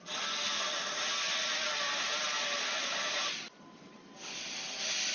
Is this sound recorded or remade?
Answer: remade